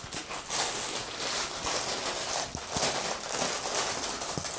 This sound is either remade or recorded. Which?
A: recorded